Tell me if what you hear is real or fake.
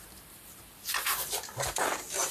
real